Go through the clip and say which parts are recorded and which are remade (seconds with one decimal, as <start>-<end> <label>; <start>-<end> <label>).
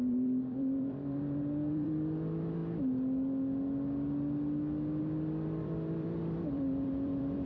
0.0-2.6 remade; 2.6-5.0 recorded; 5.0-7.5 remade